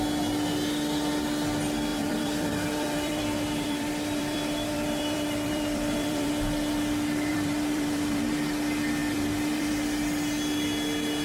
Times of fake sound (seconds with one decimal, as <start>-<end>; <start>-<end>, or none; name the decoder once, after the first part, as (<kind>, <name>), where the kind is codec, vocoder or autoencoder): 1.9-6.3 (vocoder, BigVGAN v2); 7.3-8.3; 9.0-9.7